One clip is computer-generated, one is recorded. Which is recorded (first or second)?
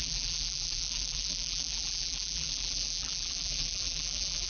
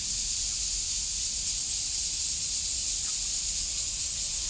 second